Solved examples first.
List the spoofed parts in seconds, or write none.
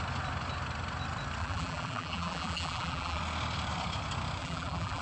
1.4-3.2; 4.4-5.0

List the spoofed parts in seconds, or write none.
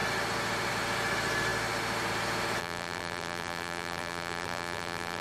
2.6-5.2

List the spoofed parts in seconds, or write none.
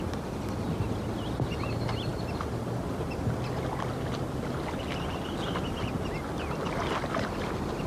none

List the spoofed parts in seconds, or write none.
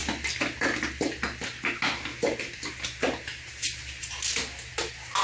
none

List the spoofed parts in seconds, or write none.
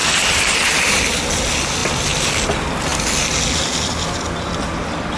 0.0-1.0